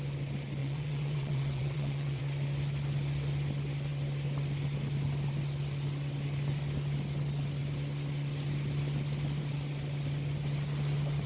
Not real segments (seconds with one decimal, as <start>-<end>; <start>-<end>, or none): 0.6-2.2